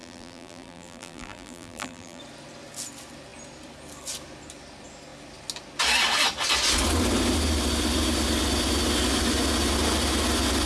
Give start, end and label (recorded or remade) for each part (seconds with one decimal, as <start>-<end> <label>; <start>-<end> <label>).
0.0-2.2 remade; 2.2-10.7 recorded